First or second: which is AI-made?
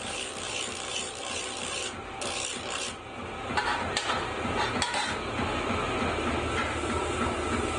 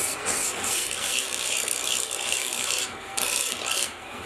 second